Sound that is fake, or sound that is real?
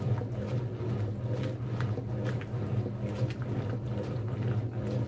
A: real